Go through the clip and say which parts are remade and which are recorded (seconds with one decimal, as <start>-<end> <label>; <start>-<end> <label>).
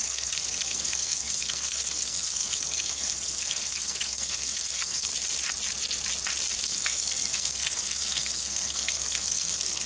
0.0-5.1 remade; 5.1-6.6 recorded; 6.6-9.9 remade